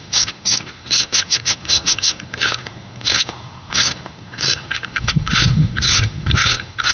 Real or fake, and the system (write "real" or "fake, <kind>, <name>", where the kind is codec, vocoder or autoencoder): fake, codec, SNAC